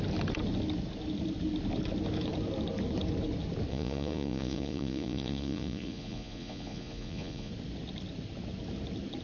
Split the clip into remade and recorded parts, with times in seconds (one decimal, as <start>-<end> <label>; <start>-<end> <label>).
0.0-3.7 recorded; 3.7-7.5 remade; 7.5-9.2 recorded